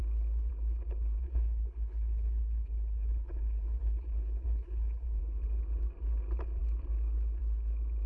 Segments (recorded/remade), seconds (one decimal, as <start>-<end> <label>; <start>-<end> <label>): 0.0-1.2 recorded; 1.2-5.2 remade; 5.2-8.1 recorded